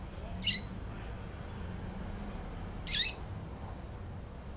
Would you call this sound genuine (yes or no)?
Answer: yes